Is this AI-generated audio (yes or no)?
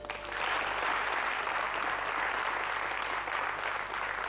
no